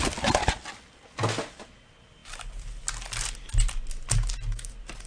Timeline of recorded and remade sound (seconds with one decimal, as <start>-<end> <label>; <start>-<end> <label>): 0.0-5.1 recorded